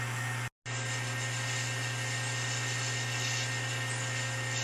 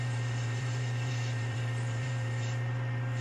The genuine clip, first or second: first